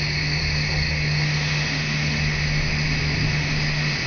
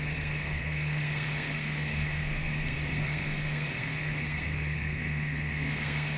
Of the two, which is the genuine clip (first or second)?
first